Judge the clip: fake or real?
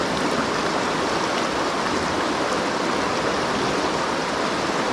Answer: real